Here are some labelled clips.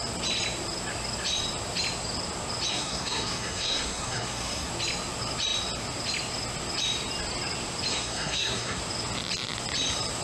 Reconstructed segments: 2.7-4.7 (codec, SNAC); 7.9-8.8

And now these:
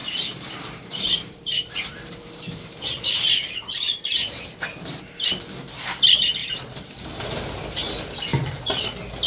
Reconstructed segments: 0.0-5.0 (vocoder, BigVGAN v2); 6.4-7.4

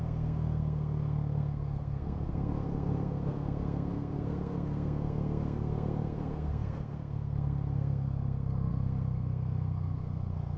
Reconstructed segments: 0.0-10.6 (codec, SNAC)

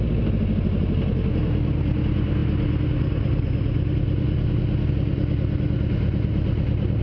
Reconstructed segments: none

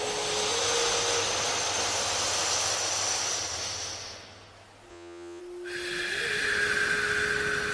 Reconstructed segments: 4.9-5.4 (vocoder, Vocos)

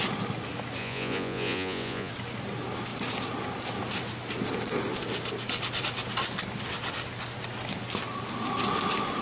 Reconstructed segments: 0.8-2.1 (vocoder, Vocos)